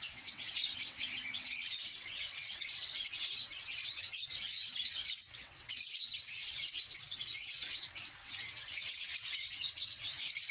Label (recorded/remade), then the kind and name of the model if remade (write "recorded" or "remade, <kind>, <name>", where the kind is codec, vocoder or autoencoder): remade, vocoder, WaveNeXt